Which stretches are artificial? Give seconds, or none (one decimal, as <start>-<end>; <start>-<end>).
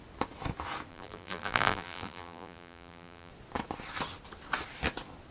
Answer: 0.9-3.3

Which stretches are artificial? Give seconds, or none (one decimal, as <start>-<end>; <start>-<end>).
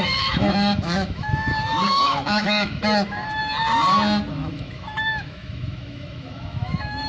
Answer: 0.0-3.4; 4.3-7.1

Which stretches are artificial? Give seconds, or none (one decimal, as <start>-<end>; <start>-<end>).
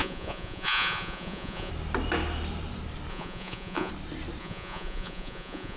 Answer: 0.0-1.7; 3.1-3.9; 4.4-5.8